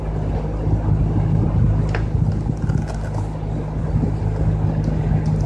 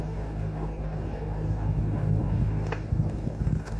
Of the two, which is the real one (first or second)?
first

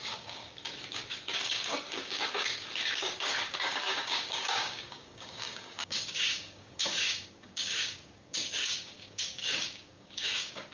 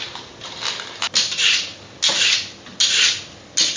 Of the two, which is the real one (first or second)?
second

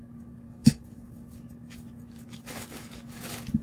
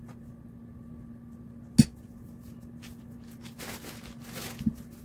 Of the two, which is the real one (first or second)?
second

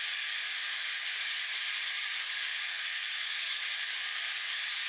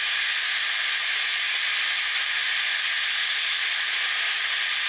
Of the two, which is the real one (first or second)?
second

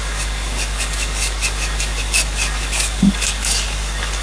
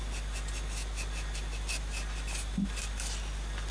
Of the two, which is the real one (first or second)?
second